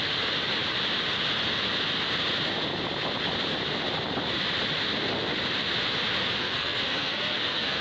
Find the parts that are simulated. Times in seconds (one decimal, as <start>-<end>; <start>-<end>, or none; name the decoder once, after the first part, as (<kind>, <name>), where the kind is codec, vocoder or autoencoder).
6.4-7.8 (codec, SNAC)